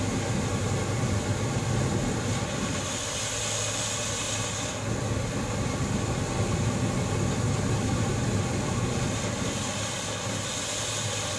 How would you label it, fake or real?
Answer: real